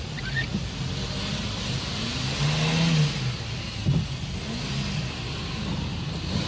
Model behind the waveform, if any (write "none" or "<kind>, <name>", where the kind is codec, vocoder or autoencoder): none